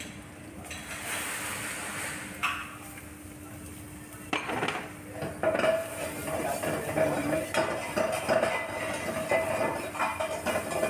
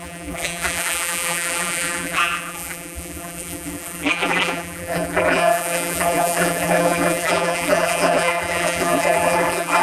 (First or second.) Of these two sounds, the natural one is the first